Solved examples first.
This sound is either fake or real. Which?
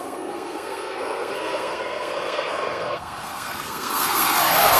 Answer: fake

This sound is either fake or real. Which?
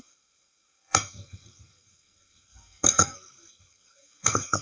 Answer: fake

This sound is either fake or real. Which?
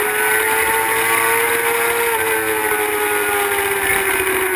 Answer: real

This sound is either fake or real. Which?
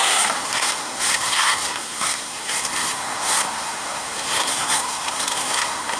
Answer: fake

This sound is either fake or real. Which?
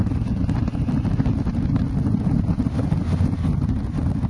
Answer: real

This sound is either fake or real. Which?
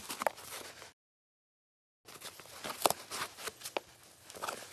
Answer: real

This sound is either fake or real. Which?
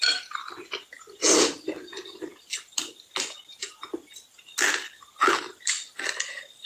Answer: real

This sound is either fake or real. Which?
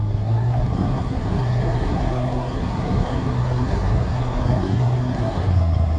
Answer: fake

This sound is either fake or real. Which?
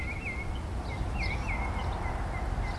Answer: real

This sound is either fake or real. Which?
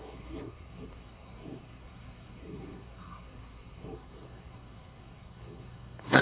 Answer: fake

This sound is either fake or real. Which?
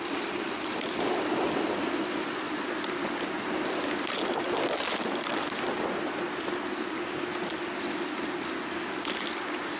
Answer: real